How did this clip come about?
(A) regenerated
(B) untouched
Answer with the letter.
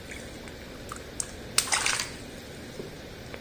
B